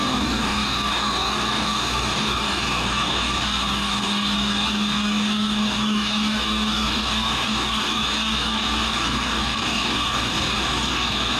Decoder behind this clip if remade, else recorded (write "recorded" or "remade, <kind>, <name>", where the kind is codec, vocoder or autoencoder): remade, codec, DAC